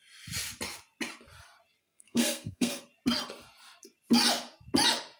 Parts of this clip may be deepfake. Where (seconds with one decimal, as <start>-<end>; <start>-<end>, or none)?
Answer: 1.8-2.8